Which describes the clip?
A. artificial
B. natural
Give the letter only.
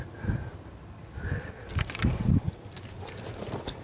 B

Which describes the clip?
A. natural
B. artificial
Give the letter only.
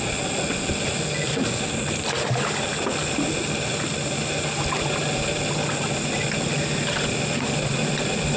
A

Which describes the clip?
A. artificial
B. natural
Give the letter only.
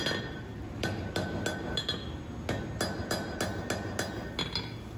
B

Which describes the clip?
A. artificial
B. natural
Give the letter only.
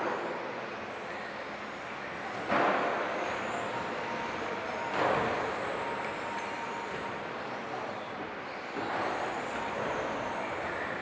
B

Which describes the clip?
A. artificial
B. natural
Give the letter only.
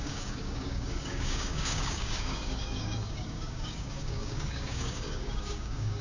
A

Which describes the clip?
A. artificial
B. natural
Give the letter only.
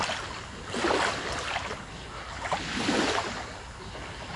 B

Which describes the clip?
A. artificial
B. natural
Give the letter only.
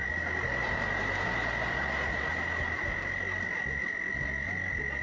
B